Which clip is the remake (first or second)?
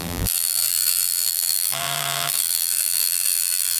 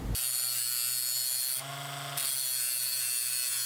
first